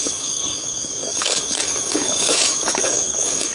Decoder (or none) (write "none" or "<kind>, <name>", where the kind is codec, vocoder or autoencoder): codec, DAC